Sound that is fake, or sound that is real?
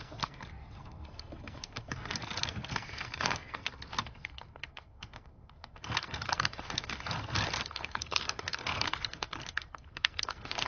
fake